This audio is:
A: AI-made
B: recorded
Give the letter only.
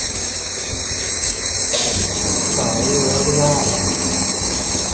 A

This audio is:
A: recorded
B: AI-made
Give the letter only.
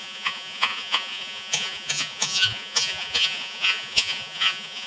B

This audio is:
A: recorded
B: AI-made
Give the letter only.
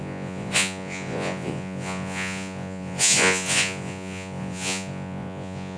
B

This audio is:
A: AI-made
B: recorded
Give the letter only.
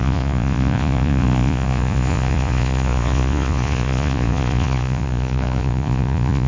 A